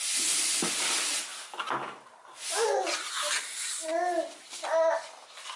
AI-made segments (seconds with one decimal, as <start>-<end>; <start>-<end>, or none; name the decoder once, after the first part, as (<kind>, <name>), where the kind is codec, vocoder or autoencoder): none